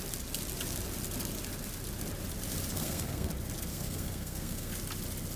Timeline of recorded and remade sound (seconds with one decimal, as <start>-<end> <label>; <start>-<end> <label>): 0.0-2.7 recorded; 2.7-3.3 remade; 3.3-3.7 recorded; 3.7-4.7 remade; 4.7-5.4 recorded